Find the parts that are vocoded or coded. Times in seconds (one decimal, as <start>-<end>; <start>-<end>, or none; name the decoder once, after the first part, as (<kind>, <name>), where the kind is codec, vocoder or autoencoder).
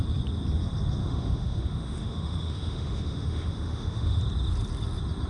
1.0-4.2 (autoencoder, DAC-VAE)